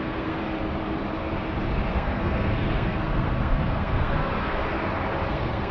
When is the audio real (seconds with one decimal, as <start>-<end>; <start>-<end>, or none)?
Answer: 0.4-1.9; 4.6-5.3